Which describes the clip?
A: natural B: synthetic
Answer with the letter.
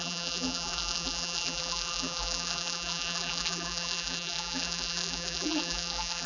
B